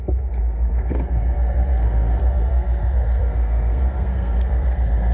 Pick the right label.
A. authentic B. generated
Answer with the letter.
B